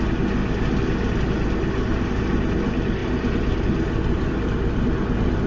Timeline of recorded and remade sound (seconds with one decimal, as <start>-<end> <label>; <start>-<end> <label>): 0.0-3.0 recorded; 3.0-3.9 remade; 3.9-5.5 recorded